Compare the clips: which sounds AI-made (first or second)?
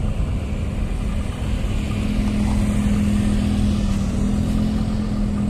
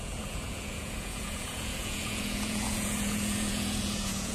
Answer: second